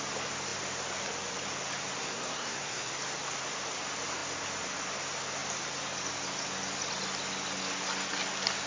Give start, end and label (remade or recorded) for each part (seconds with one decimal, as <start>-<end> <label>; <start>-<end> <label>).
0.0-2.0 recorded; 2.0-2.9 remade; 2.9-8.7 recorded